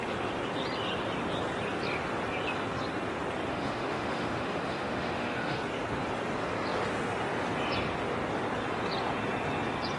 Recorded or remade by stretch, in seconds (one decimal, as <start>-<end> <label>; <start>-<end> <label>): 0.0-3.5 recorded; 3.5-5.6 remade; 5.6-10.0 recorded

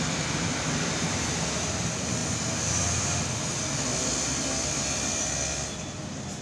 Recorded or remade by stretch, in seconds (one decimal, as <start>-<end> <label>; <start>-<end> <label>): 0.0-6.4 recorded

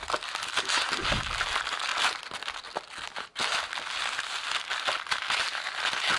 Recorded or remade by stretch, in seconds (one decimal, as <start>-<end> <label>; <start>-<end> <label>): 0.0-6.2 recorded

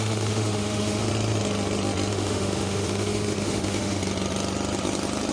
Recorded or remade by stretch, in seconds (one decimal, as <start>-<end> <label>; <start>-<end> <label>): 0.0-1.1 remade; 1.1-2.1 recorded; 2.1-4.0 remade; 4.0-5.3 recorded

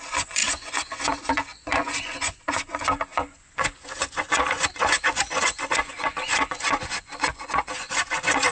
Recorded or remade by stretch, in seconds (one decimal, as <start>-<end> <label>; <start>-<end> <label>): 0.0-8.5 remade

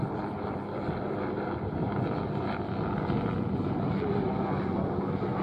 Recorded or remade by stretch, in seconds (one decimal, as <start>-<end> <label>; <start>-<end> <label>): 0.0-3.2 remade; 3.2-5.4 recorded

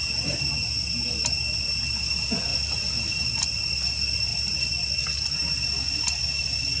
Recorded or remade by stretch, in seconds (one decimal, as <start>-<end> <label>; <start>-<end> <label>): 0.0-6.8 recorded